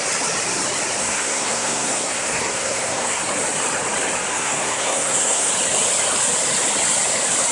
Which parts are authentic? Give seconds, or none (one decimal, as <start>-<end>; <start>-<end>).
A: 0.0-1.0; 3.2-4.3; 5.5-7.5